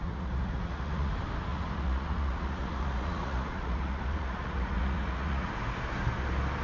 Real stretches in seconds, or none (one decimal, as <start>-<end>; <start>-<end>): 1.1-1.5; 5.5-6.6